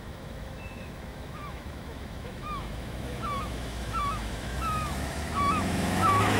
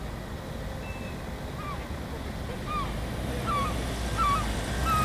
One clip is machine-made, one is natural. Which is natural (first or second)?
second